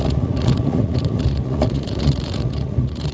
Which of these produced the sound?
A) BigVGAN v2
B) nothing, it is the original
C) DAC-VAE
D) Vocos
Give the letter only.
D